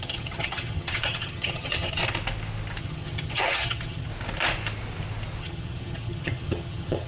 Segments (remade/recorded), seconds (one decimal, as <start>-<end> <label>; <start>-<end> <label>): 0.0-2.0 remade; 2.0-2.8 recorded; 2.8-4.1 remade; 4.1-5.4 recorded; 5.4-7.1 remade